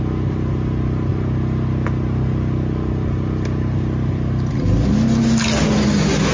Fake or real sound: real